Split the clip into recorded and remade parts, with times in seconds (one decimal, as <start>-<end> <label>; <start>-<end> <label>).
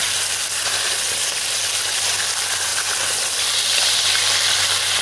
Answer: 0.0-5.0 recorded